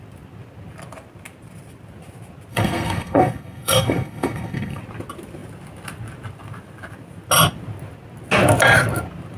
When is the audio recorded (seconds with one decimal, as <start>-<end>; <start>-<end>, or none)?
0.0-2.5; 4.8-9.4